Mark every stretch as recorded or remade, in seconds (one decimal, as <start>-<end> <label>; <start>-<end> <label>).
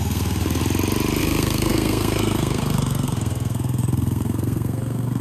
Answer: 0.0-0.6 remade; 0.6-1.2 recorded; 1.2-5.2 remade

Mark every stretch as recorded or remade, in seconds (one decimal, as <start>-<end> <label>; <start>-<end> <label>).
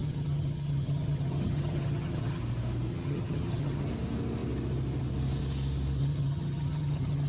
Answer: 0.0-2.4 remade; 2.4-2.9 recorded; 2.9-3.9 remade; 3.9-6.0 recorded; 6.0-7.3 remade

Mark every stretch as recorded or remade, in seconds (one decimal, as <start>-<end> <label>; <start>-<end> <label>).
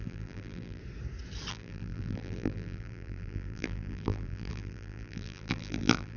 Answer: 0.0-0.8 remade; 0.8-1.5 recorded; 1.5-6.2 remade